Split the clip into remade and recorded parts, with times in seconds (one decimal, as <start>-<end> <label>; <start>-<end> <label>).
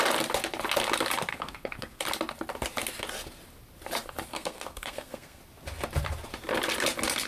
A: 0.0-1.3 recorded; 1.3-2.0 remade; 2.0-4.3 recorded; 4.3-5.4 remade; 5.4-7.3 recorded